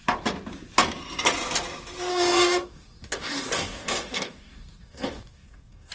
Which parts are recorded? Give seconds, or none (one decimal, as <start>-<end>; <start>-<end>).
0.0-2.1